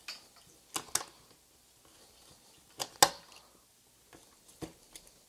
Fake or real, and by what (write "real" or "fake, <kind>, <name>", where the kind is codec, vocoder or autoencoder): real